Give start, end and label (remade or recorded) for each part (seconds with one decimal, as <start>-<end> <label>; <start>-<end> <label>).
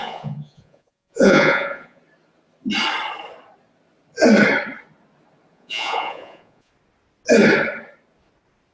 0.0-2.0 remade; 2.0-5.5 recorded; 5.5-6.7 remade; 6.7-8.7 recorded